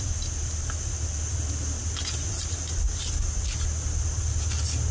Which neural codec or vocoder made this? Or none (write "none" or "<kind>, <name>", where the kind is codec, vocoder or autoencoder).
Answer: none